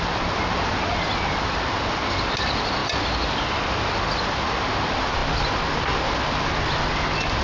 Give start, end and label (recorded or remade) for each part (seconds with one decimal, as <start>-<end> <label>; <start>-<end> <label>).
0.0-7.4 recorded